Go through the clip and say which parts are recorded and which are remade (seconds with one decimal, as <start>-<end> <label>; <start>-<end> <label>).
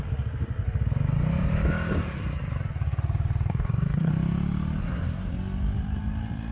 0.0-3.5 recorded; 3.5-4.1 remade; 4.1-4.8 recorded; 4.8-5.3 remade; 5.3-6.5 recorded